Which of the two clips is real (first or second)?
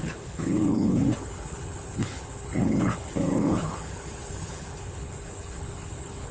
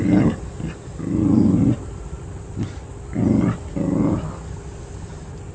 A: second